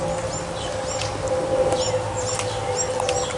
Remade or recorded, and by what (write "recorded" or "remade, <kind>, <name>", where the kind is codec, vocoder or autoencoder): recorded